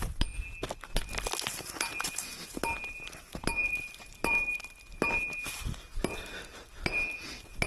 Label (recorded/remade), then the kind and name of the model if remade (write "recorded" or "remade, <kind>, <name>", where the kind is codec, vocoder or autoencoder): recorded